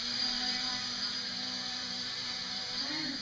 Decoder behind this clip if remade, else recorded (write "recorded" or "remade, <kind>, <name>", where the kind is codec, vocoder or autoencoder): remade, vocoder, BigVGAN v2